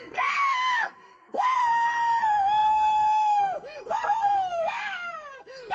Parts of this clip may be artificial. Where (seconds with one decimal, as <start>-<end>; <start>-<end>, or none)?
0.0-1.6; 2.2-5.7